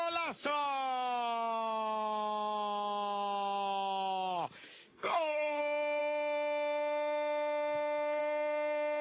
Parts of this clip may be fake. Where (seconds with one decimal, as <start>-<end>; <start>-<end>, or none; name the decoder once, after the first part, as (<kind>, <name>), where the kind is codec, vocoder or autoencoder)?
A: 4.9-5.6 (codec, SNAC)